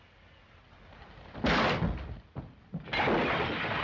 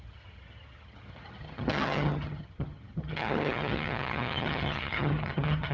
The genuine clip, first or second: first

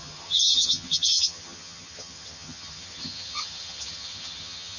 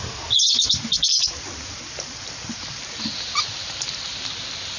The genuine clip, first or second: second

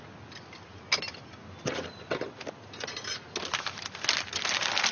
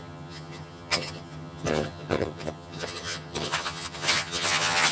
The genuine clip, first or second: first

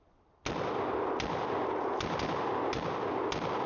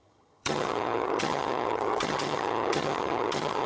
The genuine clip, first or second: first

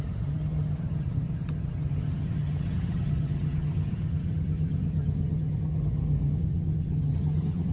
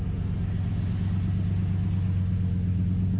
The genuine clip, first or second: second